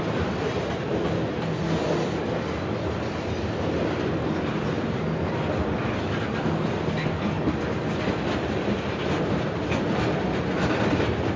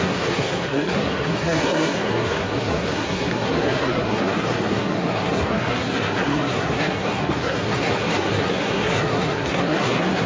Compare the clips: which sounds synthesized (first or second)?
second